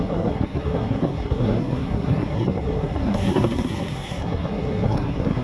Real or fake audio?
fake